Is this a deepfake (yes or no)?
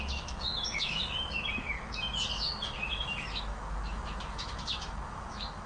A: yes